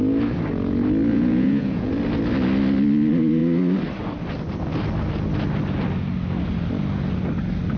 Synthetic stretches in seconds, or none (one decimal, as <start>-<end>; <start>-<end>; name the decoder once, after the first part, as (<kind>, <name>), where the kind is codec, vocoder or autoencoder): 1.1-1.9 (vocoder, Vocos)